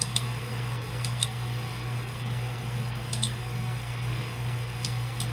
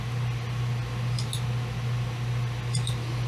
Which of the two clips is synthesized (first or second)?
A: first